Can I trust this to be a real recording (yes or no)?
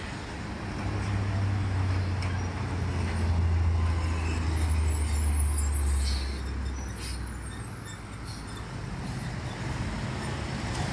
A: yes